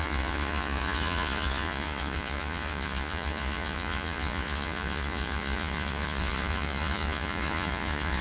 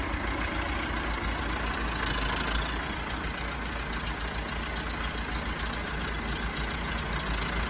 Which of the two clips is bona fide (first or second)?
second